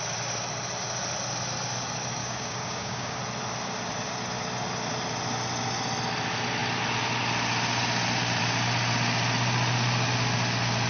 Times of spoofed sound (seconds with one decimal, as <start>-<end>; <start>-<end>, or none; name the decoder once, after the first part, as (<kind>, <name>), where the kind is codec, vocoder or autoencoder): 2.2-3.2 (codec, DAC)